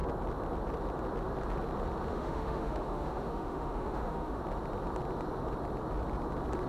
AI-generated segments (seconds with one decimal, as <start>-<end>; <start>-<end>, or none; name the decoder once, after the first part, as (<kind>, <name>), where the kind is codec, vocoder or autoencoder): 2.1-4.4 (autoencoder, DAC-VAE)